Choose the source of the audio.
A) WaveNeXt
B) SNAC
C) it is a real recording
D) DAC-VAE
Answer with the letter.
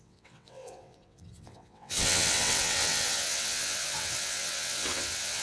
A